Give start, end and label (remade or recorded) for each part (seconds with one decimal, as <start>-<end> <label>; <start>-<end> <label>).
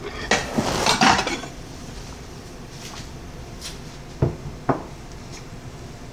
0.0-0.4 recorded; 0.4-3.9 remade; 3.9-6.1 recorded